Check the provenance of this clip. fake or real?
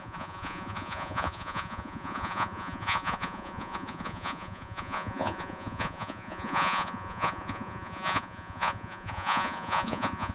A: fake